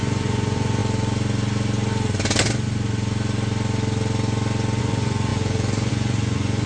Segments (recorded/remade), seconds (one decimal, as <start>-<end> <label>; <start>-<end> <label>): 0.0-0.8 remade; 0.8-4.8 recorded; 4.8-6.7 remade